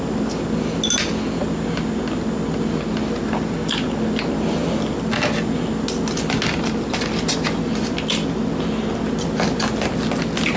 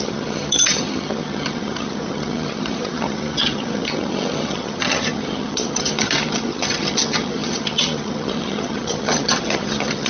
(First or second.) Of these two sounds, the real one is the first